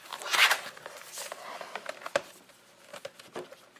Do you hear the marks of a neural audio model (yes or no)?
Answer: no